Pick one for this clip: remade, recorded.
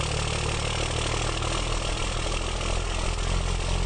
recorded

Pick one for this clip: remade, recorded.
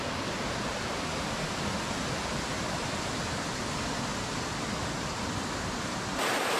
recorded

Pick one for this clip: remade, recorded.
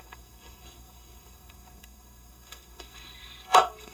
remade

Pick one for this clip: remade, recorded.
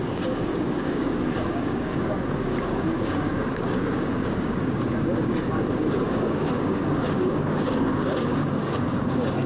remade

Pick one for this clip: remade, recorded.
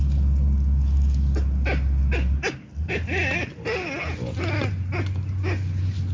recorded